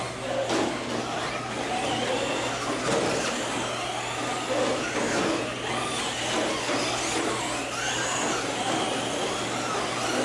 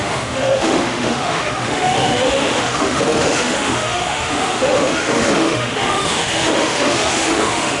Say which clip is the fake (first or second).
second